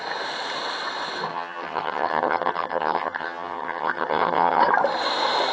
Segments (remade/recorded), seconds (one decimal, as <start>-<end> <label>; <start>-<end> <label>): 0.0-1.3 recorded; 1.3-4.6 remade; 4.6-5.5 recorded